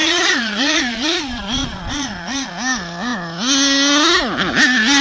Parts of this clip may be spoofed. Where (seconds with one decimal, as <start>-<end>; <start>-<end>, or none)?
0.0-2.5